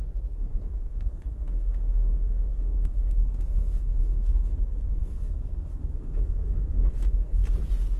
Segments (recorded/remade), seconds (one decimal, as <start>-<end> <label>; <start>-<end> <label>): 0.0-7.4 remade; 7.4-8.0 recorded